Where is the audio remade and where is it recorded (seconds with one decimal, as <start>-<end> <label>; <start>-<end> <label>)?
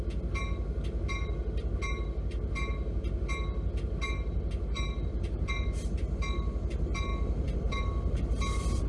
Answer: 0.0-8.9 recorded